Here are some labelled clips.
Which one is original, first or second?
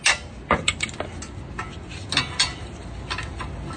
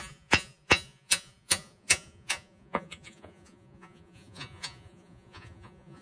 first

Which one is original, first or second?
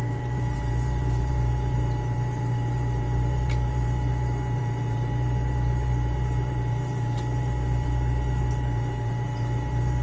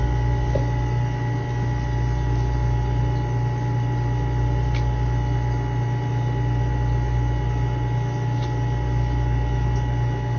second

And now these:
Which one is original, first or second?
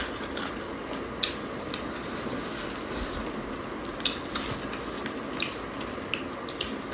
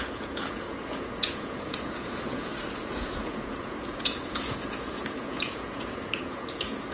first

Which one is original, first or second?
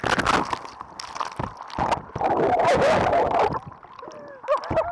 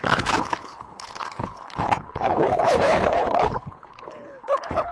first